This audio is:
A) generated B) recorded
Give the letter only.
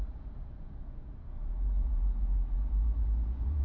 A